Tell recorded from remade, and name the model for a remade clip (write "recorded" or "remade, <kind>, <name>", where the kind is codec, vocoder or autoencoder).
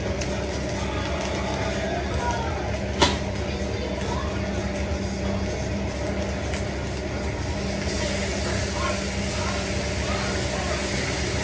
recorded